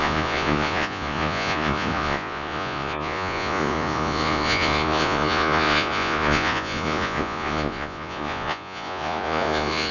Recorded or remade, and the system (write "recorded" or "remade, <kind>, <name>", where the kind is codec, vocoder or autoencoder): remade, vocoder, Vocos